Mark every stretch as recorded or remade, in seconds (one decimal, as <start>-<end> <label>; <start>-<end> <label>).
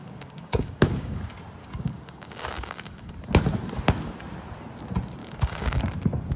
0.0-1.2 remade; 1.2-1.6 recorded; 1.6-3.1 remade; 3.1-5.2 recorded; 5.2-5.8 remade; 5.8-6.4 recorded